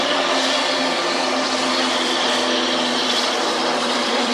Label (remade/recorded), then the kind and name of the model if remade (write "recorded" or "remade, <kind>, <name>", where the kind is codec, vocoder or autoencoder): remade, vocoder, BigVGAN v2